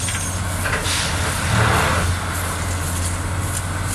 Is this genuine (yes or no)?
yes